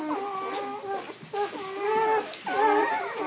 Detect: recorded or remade recorded